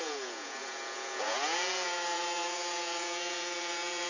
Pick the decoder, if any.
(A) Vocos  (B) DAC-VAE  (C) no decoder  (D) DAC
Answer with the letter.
A